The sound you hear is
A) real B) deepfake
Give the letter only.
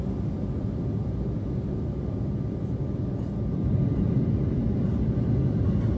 A